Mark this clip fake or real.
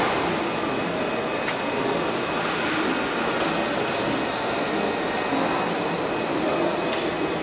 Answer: real